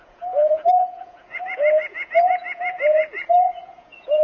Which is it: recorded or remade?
remade